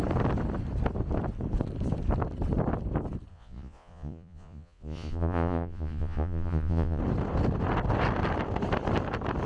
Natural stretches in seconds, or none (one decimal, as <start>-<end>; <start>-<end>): 0.0-3.3; 7.0-9.5